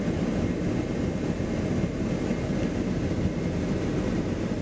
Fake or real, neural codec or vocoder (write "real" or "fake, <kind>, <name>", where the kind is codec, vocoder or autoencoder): real